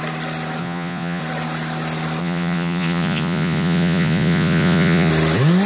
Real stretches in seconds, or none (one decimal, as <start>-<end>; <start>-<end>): 0.0-0.6; 1.2-2.2; 5.1-5.7